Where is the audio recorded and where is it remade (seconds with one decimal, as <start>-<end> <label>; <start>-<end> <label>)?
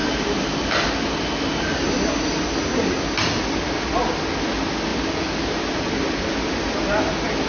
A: 0.0-7.5 recorded